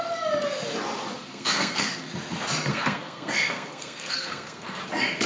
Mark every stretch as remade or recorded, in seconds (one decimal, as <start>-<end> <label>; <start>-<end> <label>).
0.0-1.3 recorded; 1.3-2.0 remade; 2.0-2.7 recorded; 2.7-4.8 remade; 4.8-5.3 recorded